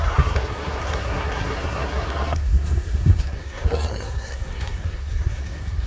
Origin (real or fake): fake